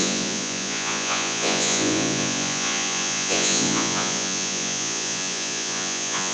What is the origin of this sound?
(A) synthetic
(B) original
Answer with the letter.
A